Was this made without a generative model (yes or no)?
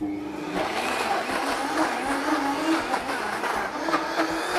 yes